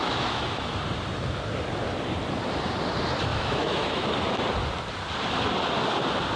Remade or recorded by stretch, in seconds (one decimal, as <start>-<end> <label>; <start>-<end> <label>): 0.0-0.6 remade; 0.6-3.3 recorded; 3.3-4.1 remade; 4.1-6.4 recorded